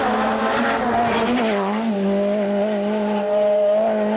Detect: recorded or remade recorded